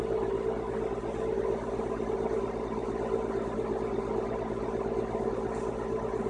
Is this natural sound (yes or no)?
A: yes